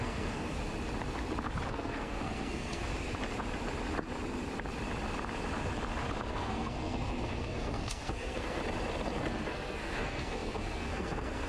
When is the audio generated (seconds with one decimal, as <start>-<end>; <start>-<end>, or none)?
0.0-0.6; 1.7-2.9; 6.3-8.6; 9.2-11.5